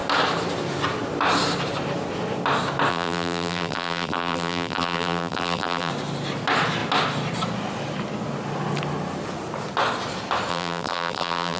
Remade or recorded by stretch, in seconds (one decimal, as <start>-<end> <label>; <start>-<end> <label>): 0.0-2.9 recorded; 2.9-5.9 remade; 5.9-10.5 recorded; 10.5-11.6 remade